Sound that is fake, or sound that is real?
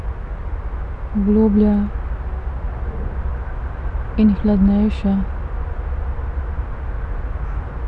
real